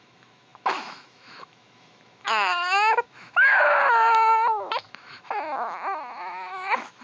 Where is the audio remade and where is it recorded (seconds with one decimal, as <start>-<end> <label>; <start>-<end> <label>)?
0.0-7.0 remade